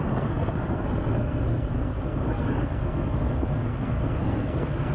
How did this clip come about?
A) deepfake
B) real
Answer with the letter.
A